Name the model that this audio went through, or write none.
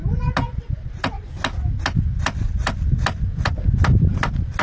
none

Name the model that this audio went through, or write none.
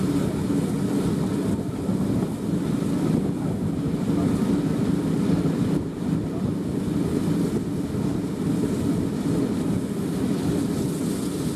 none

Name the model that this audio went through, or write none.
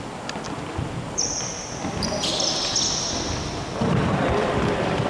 none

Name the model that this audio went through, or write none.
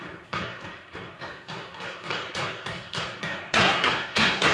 codec, SNAC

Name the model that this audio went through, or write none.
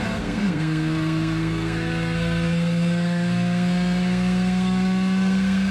codec, SNAC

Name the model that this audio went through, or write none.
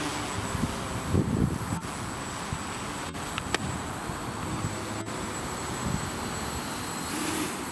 none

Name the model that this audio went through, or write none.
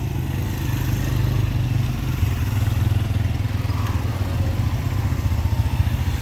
none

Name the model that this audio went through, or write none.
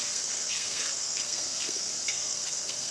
codec, SNAC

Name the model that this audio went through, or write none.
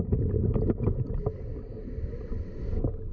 none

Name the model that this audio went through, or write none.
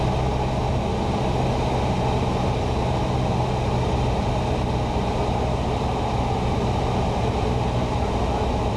none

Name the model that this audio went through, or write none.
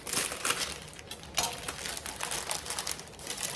none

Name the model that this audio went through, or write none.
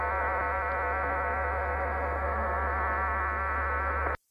none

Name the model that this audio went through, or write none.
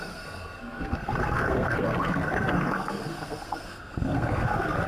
codec, SNAC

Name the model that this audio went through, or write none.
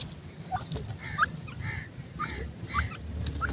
none